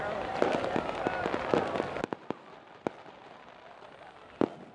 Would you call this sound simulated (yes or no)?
no